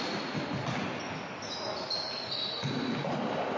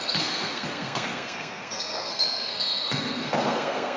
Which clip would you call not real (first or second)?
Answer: second